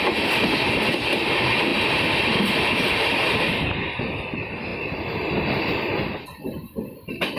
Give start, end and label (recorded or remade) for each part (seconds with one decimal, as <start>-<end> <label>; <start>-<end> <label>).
0.0-7.4 recorded